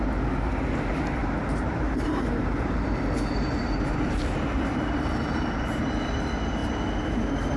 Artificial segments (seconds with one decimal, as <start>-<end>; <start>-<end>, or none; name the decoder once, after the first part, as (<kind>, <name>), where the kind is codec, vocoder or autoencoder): 1.2-5.8 (vocoder, BigVGAN v2); 6.6-7.6